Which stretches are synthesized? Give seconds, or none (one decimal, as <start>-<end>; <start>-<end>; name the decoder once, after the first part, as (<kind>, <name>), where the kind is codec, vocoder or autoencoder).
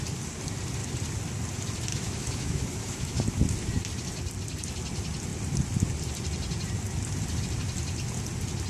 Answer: 1.9-3.2 (autoencoder, DAC-VAE)